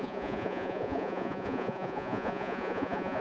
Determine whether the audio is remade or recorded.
remade